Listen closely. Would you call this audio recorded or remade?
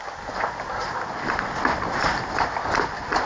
recorded